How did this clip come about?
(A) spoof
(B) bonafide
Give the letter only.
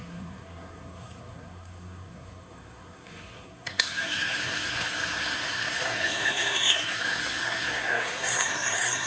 A